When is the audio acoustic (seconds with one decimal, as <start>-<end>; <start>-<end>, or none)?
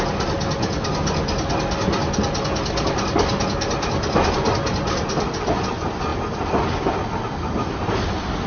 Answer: 0.0-8.5